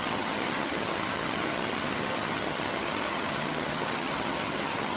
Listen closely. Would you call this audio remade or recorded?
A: remade